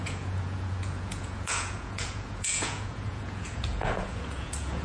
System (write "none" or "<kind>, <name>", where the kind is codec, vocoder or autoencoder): vocoder, Vocos